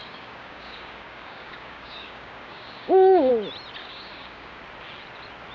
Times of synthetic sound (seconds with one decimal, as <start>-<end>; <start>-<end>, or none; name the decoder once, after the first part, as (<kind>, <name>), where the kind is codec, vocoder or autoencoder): 0.0-3.3 (codec, DAC); 3.8-4.6